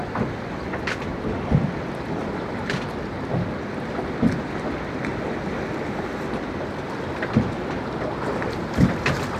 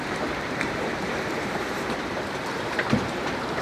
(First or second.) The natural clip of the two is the first